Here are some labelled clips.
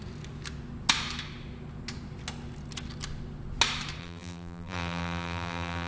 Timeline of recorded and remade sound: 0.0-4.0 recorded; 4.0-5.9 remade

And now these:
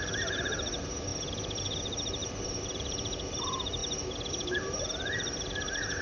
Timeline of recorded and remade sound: 0.0-1.1 remade; 1.1-1.8 recorded; 1.8-3.8 remade; 3.8-4.3 recorded; 4.3-6.0 remade

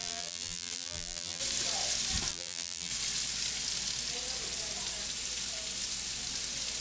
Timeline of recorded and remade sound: 0.0-1.4 remade; 1.4-2.3 recorded; 2.3-2.9 remade; 2.9-6.8 recorded

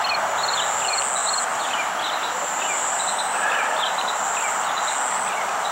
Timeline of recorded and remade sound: 0.0-1.2 recorded; 1.2-4.6 remade; 4.6-5.7 recorded

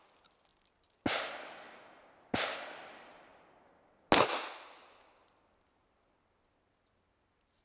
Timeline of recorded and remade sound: 0.0-7.6 recorded